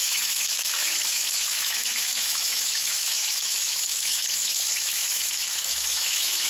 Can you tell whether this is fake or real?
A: fake